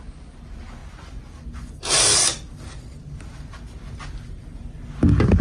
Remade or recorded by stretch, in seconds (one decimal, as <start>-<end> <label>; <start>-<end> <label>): 0.0-5.4 recorded